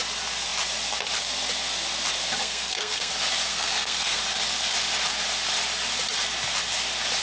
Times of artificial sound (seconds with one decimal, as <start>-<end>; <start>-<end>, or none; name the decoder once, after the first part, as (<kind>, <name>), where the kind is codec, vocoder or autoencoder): 2.4-3.1 (codec, SNAC); 3.5-4.2